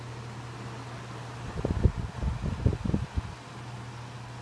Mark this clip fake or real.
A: real